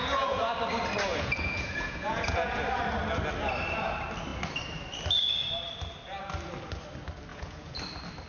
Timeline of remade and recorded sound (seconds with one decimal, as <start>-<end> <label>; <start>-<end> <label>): 0.0-0.5 remade; 0.5-1.1 recorded; 1.1-2.6 remade; 2.6-7.3 recorded; 7.3-7.8 remade; 7.8-8.3 recorded